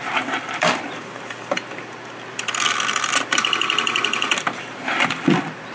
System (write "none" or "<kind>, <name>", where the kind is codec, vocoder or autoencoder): vocoder, BigVGAN v2